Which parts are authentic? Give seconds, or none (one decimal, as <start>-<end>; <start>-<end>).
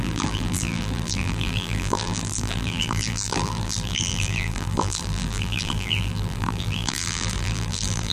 none